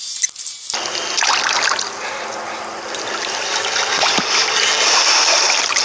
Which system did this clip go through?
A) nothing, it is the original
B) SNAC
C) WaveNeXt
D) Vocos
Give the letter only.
A